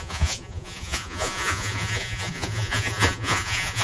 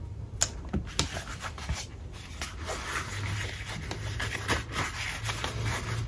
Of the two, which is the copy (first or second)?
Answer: first